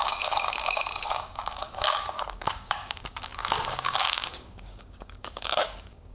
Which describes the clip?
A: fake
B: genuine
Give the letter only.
A